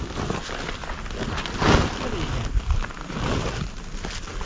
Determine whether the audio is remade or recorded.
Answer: recorded